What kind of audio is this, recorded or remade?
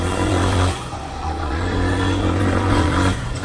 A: remade